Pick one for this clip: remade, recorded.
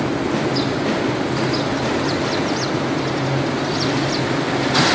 recorded